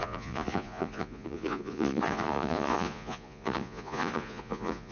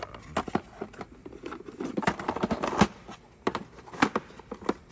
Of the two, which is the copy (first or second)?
first